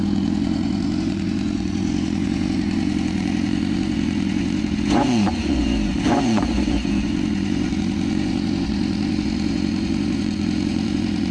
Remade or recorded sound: remade